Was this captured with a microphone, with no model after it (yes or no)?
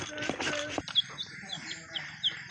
no